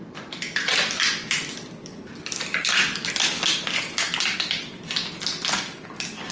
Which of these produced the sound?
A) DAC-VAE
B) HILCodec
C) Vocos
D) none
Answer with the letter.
D